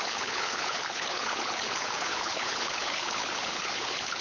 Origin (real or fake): fake